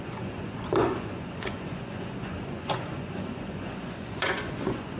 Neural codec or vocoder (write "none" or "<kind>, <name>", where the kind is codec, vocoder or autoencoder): vocoder, Vocos